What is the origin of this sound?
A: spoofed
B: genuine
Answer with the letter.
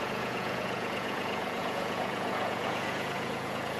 A